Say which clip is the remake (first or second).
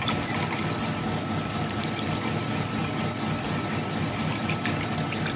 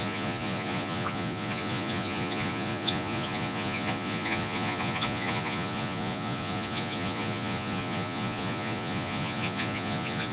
second